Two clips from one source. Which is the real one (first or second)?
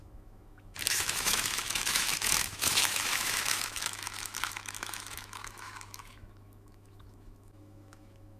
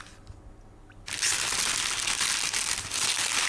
second